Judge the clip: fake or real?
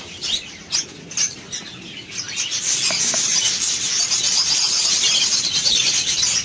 real